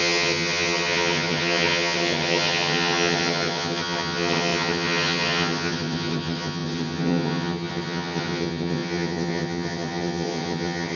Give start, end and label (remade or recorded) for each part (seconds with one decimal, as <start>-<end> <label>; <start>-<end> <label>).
0.0-11.0 remade